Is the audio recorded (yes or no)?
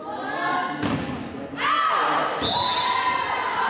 yes